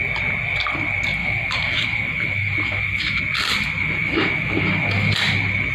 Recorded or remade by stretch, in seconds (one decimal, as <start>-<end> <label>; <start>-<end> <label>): 0.0-1.2 recorded; 1.2-3.2 remade; 3.2-3.8 recorded; 3.8-5.1 remade; 5.1-5.7 recorded